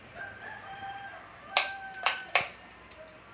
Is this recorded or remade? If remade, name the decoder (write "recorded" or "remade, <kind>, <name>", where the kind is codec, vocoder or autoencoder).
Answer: remade, vocoder, BigVGAN v2